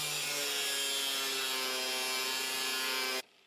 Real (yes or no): yes